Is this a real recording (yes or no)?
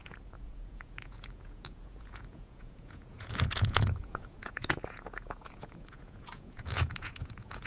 no